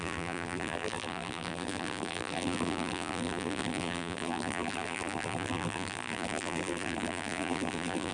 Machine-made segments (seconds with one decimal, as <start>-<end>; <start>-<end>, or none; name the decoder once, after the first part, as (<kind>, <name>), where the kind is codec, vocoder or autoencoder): 0.0-8.1 (vocoder, BigVGAN v2)